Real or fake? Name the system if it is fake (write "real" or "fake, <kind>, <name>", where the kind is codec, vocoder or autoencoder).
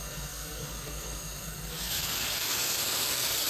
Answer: fake, codec, SNAC